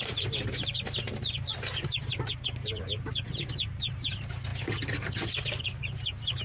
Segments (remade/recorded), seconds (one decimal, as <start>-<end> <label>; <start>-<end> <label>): 0.0-1.5 remade; 1.5-3.5 recorded; 3.5-4.5 remade; 4.5-5.6 recorded; 5.6-6.4 remade